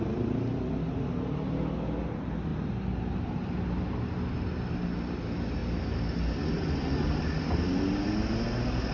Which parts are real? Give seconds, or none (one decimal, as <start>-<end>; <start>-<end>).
0.0-8.9